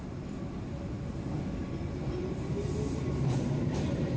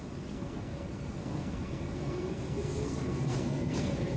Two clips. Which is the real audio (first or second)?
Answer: first